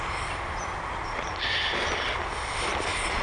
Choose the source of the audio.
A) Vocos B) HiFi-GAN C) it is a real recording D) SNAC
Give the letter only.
C